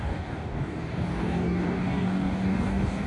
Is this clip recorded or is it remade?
remade